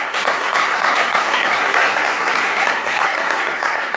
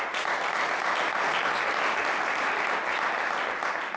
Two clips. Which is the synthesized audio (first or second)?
first